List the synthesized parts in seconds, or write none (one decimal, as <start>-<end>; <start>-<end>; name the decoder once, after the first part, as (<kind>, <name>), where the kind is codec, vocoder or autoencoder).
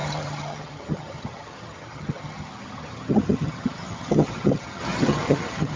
0.0-5.8 (vocoder, HiFi-GAN)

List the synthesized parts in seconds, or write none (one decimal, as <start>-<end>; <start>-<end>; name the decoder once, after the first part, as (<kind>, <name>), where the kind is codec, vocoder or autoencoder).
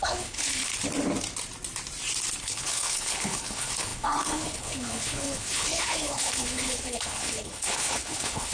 0.0-0.7 (codec, HILCodec); 2.4-8.5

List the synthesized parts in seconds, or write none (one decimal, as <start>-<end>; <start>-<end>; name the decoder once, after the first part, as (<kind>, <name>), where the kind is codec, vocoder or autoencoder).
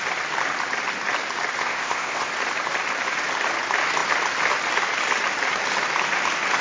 1.6-2.3 (codec, ZipCodec)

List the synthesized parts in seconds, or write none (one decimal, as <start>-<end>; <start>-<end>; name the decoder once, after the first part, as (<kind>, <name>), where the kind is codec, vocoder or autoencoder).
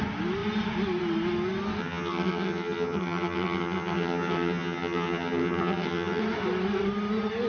1.8-6.2 (vocoder, HiFi-GAN)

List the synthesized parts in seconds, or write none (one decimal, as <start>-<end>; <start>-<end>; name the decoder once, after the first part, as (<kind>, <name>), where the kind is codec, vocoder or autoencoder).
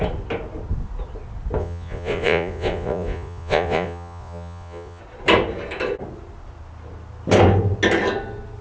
1.6-5.0 (vocoder, Vocos)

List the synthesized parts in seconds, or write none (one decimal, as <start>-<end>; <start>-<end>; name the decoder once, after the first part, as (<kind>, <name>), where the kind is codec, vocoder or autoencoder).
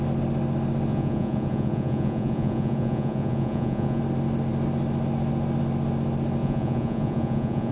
0.9-4.0 (vocoder, Vocos); 6.4-7.7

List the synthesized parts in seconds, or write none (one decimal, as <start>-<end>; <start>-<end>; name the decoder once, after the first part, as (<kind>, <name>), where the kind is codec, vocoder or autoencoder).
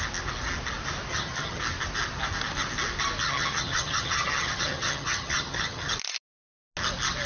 1.1-1.6 (vocoder, HiFi-GAN); 3.2-5.9